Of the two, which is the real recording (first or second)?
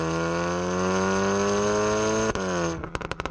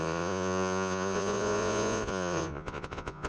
first